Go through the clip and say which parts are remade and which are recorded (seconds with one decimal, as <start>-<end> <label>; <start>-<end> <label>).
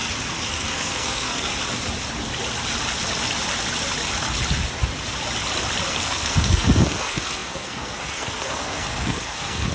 0.0-0.5 recorded; 0.5-1.5 remade; 1.5-5.9 recorded; 5.9-9.7 remade